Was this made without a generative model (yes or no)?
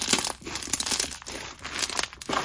yes